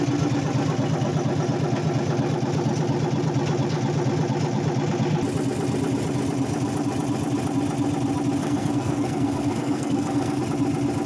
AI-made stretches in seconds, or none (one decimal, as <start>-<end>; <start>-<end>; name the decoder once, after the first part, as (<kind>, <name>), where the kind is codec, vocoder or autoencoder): 8.4-10.4 (codec, SNAC)